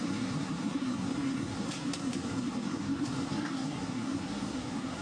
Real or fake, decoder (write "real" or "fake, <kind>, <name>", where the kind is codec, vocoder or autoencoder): fake, codec, SNAC